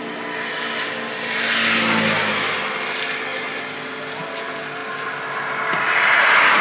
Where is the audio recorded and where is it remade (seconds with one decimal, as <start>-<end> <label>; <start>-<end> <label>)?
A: 0.0-6.6 recorded